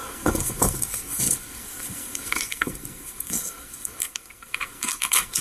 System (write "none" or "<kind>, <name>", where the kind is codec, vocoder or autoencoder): codec, SNAC